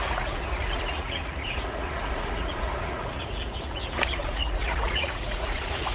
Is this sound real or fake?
fake